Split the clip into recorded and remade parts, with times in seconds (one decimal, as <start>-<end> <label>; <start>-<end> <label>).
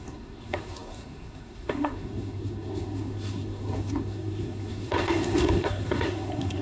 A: 0.0-6.6 remade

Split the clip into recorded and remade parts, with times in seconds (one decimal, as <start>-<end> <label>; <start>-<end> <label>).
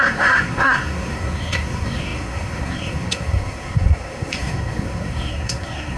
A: 0.0-6.0 remade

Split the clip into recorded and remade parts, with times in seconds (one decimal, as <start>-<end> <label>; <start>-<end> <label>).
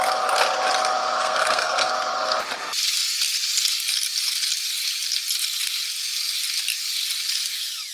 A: 0.0-1.2 recorded; 1.2-1.9 remade; 1.9-7.9 recorded